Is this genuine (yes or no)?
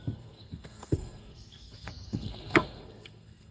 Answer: no